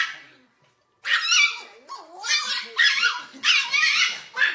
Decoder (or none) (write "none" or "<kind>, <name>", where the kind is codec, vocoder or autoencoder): none